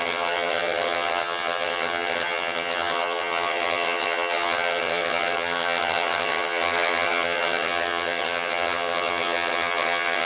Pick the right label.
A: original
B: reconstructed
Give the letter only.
B